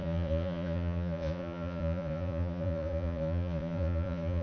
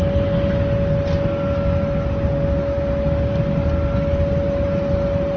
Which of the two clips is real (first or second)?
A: second